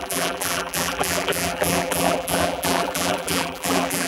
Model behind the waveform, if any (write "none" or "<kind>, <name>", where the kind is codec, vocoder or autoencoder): vocoder, BigVGAN v2